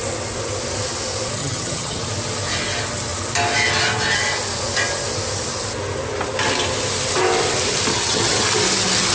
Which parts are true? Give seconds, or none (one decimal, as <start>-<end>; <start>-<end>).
0.0-1.4; 2.0-7.9; 8.4-9.1